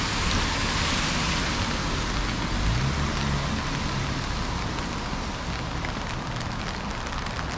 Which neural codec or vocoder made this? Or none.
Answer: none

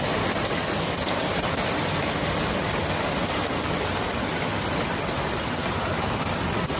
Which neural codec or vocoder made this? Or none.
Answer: none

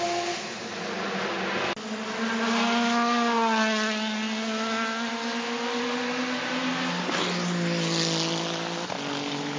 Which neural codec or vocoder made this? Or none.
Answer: none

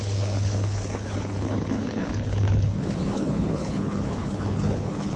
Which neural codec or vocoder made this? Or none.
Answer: codec, HILCodec